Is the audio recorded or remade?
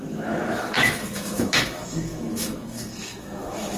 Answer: remade